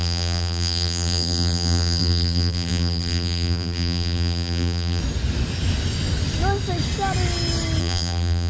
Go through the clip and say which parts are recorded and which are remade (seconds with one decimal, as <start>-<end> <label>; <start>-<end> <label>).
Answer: 0.0-5.0 remade; 5.0-7.8 recorded; 7.8-8.5 remade

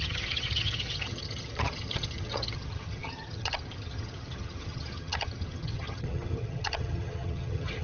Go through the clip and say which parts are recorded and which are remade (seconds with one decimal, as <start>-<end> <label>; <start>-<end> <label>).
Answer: 0.0-7.8 remade

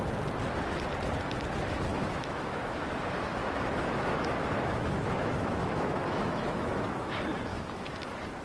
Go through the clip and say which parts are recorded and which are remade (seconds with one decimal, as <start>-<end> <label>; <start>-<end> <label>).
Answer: 0.0-1.9 recorded; 1.9-2.8 remade; 2.8-3.4 recorded; 3.4-7.1 remade; 7.1-7.5 recorded; 7.5-8.0 remade; 8.0-8.4 recorded

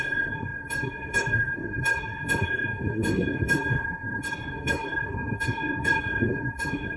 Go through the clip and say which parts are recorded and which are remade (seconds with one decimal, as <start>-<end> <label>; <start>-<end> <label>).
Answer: 0.0-7.0 remade

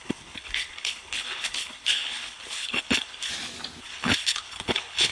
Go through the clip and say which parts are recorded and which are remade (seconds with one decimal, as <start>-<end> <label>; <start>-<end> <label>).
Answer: 0.0-3.3 remade; 3.3-3.8 recorded; 3.8-5.1 remade

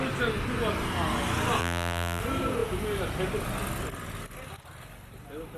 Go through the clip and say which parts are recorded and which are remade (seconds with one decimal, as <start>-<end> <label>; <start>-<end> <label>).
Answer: 0.0-1.6 recorded; 1.6-2.2 remade; 2.2-5.6 recorded